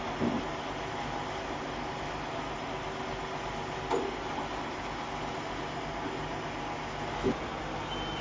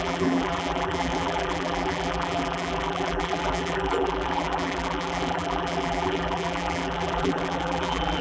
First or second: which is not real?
second